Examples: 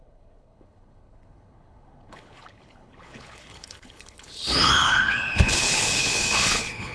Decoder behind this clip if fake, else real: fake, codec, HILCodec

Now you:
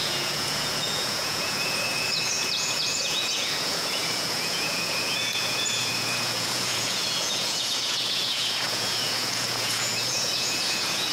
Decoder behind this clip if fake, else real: fake, vocoder, Vocos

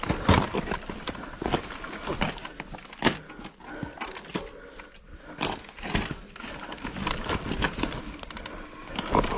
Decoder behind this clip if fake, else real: real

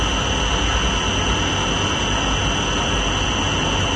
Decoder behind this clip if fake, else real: real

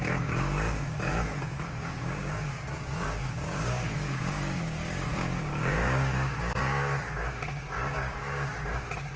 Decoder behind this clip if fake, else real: fake, codec, DAC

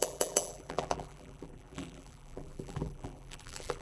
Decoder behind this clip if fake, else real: fake, vocoder, BigVGAN v2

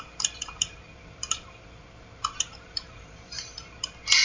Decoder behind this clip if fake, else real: fake, vocoder, BigVGAN v2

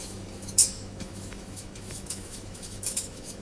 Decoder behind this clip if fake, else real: fake, autoencoder, DAC-VAE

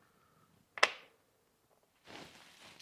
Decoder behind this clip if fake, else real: real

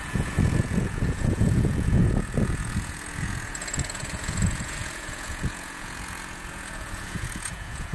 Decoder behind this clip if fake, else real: fake, vocoder, Vocos